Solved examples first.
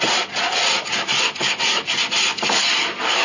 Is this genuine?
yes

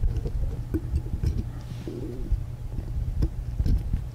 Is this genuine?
yes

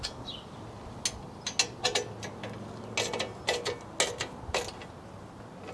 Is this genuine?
yes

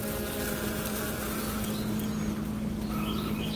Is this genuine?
yes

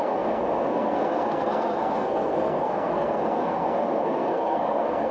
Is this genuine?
no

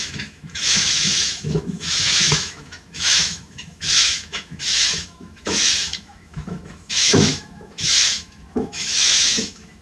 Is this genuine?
no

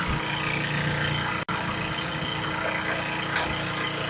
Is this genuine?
yes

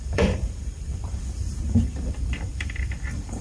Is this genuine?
no